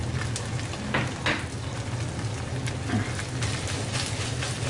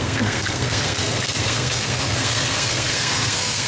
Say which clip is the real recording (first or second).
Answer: first